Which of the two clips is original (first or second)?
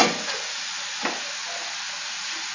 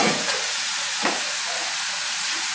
first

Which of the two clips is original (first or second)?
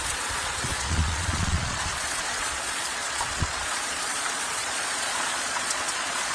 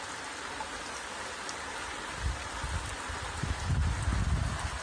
second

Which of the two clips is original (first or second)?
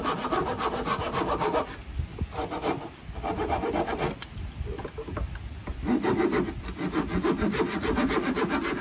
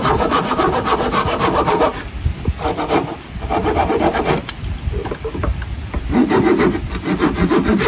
first